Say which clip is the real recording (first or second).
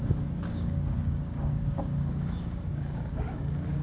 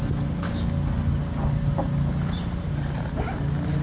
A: second